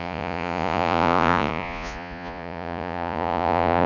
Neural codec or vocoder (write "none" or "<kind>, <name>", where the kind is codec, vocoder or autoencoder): vocoder, Vocos